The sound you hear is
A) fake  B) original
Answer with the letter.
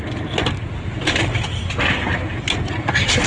B